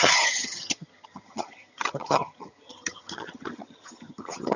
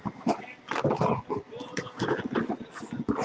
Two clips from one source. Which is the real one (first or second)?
second